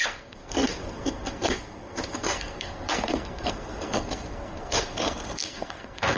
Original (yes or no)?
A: no